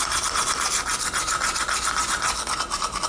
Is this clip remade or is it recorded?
recorded